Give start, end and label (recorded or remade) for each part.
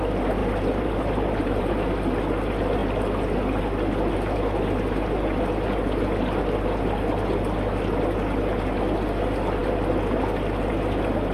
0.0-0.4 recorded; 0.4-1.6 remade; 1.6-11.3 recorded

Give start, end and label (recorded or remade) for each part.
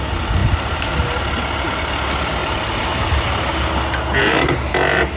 0.0-5.2 recorded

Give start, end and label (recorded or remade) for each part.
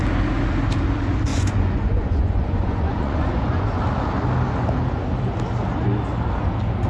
0.0-1.3 recorded; 1.3-3.8 remade; 3.8-6.9 recorded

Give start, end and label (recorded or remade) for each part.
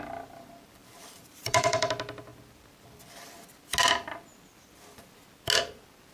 0.0-0.8 recorded; 0.8-1.9 remade; 1.9-6.1 recorded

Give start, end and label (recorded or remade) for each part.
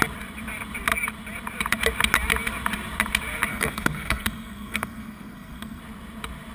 0.0-3.5 recorded; 3.5-5.8 remade; 5.8-6.5 recorded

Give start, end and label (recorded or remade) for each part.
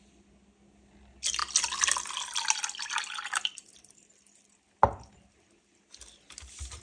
0.0-6.8 recorded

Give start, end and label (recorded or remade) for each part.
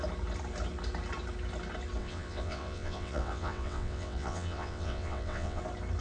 0.0-2.0 recorded; 2.0-5.6 remade; 5.6-6.0 recorded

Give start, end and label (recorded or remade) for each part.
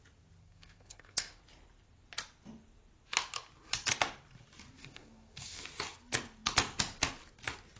0.0-0.4 recorded; 0.4-1.4 remade; 1.4-4.8 recorded; 4.8-5.6 remade; 5.6-7.8 recorded